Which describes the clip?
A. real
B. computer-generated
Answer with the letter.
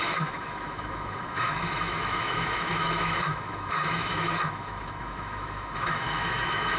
B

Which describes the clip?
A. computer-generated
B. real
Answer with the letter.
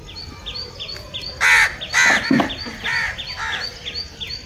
B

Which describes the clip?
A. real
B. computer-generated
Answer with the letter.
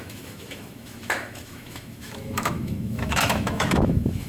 B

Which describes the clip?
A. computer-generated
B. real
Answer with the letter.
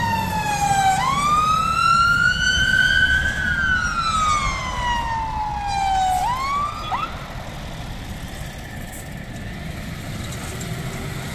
B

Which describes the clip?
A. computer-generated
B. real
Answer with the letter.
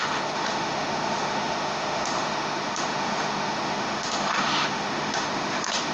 A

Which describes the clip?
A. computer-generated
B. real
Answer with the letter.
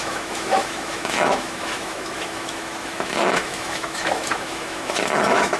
A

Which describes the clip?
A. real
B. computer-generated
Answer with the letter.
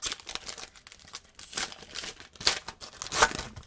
A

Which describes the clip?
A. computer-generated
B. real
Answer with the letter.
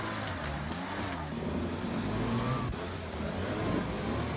B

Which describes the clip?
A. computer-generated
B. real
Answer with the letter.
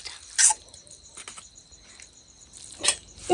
B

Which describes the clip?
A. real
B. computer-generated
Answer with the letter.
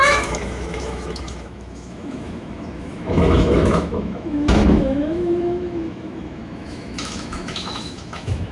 B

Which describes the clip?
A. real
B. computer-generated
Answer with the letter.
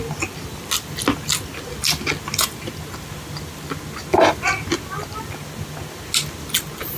A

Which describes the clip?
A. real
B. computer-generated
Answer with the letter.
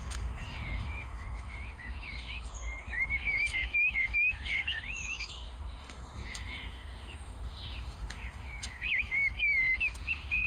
B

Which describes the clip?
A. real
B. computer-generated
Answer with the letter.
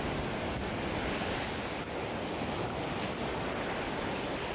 A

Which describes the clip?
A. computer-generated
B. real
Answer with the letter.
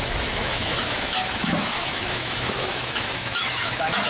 A